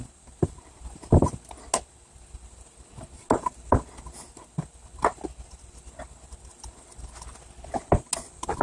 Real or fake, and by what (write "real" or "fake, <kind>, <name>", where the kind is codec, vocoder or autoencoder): real